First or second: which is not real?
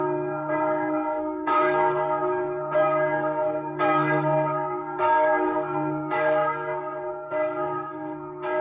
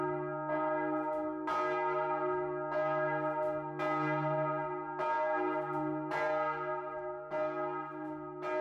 first